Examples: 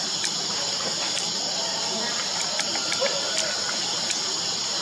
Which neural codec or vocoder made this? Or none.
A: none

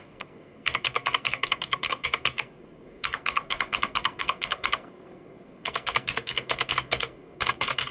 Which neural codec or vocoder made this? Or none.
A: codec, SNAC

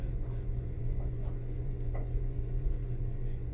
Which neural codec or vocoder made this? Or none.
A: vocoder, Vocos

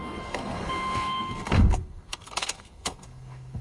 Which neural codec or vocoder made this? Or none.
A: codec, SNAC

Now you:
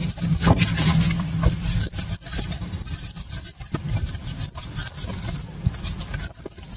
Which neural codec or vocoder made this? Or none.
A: vocoder, BigVGAN v2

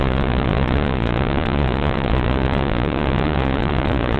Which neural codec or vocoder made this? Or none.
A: vocoder, Vocos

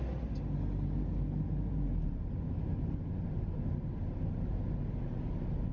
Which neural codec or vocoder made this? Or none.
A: none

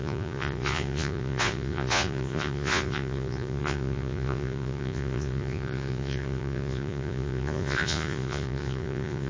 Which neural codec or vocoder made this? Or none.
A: vocoder, Vocos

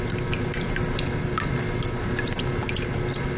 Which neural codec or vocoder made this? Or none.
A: none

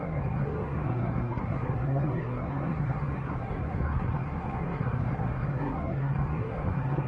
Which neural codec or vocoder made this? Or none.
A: codec, SNAC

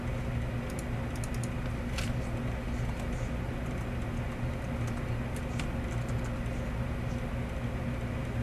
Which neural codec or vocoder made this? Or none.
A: none